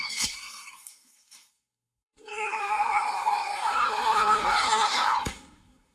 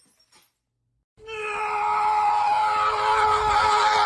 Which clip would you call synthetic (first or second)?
first